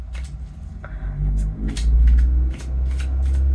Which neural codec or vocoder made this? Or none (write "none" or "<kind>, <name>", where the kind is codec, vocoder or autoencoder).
none